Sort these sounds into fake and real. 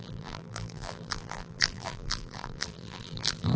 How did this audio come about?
fake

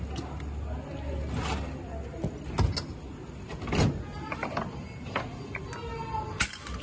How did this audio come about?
real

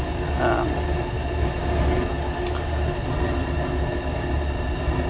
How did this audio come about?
real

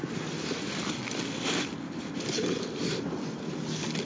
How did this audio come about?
fake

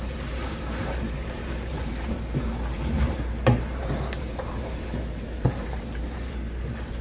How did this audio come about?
fake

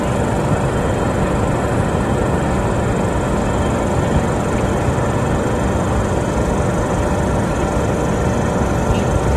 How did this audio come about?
real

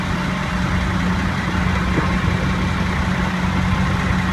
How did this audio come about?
real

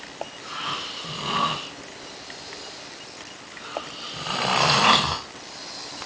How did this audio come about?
real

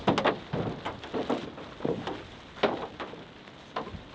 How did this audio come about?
real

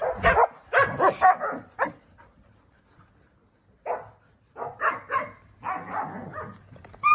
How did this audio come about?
real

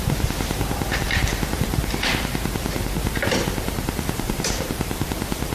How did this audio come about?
fake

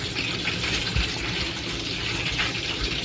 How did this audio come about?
real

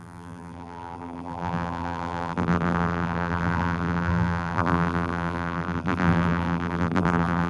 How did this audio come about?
fake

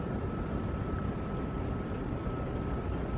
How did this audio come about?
real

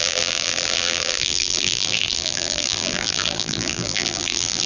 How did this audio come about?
fake